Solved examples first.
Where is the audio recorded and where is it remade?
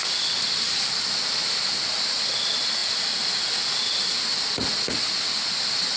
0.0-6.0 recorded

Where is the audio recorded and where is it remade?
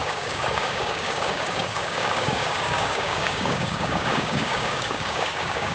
0.0-5.7 remade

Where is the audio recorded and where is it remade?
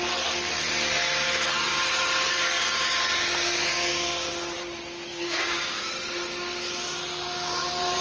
0.0-3.7 recorded; 3.7-4.3 remade; 4.3-5.1 recorded; 5.1-5.9 remade; 5.9-8.0 recorded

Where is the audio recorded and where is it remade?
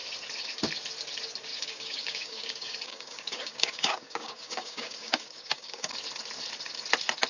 0.0-1.5 recorded; 1.5-5.9 remade; 5.9-7.3 recorded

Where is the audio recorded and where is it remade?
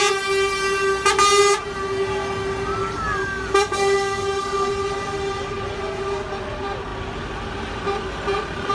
0.0-2.8 recorded; 2.8-4.7 remade; 4.7-8.7 recorded